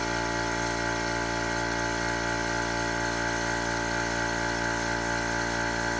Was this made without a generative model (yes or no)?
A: yes